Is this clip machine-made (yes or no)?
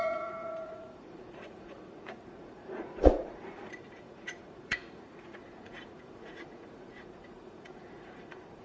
yes